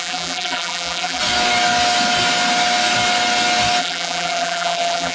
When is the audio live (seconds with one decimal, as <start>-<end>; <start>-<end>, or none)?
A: 1.2-3.8